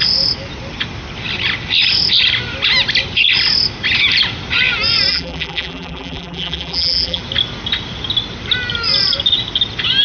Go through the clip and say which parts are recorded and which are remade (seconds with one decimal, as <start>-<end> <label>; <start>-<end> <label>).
0.0-5.1 recorded; 5.1-7.2 remade; 7.2-10.0 recorded